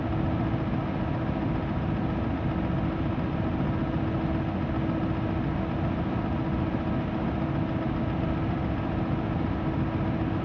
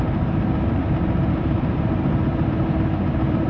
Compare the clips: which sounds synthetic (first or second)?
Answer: second